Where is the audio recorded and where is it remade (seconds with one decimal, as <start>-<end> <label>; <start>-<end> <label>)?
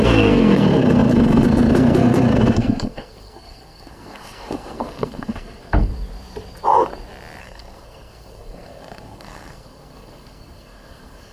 0.0-5.9 remade; 5.9-7.4 recorded; 7.4-11.3 remade